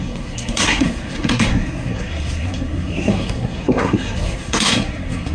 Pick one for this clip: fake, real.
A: fake